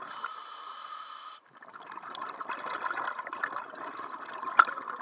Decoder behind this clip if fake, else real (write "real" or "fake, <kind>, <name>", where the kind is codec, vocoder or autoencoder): real